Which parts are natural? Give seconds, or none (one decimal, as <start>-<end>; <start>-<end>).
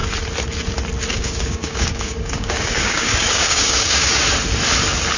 0.0-1.1; 4.2-5.2